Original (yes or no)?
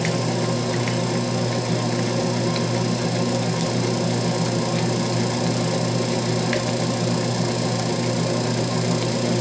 yes